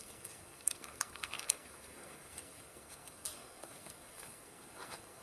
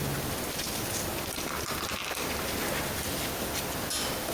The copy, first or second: first